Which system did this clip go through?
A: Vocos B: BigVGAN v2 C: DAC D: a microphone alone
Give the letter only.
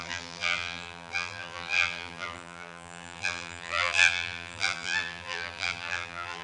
B